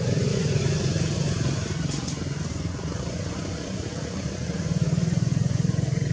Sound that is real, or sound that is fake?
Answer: fake